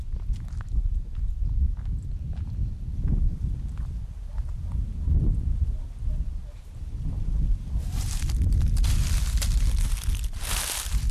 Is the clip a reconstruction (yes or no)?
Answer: no